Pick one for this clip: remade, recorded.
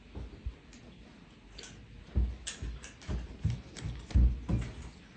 recorded